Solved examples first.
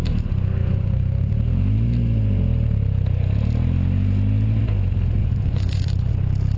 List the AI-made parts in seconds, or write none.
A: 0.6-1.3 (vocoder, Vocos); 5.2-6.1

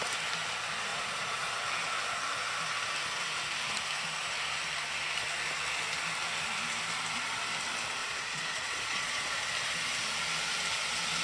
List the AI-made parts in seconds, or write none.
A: 0.9-1.5 (vocoder, Vocos); 8.0-9.4

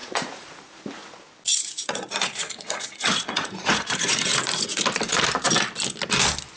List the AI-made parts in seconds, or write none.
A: 0.0-0.8 (vocoder, Vocos); 1.5-4.8